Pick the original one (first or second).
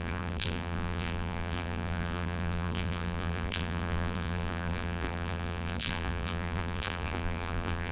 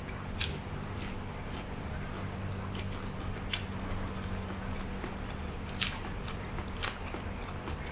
second